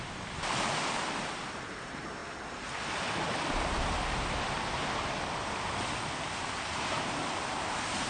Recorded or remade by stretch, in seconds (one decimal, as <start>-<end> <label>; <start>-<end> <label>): 0.0-2.2 remade; 2.2-7.0 recorded; 7.0-8.1 remade